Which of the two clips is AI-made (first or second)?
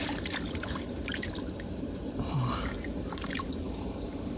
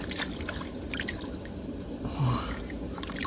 first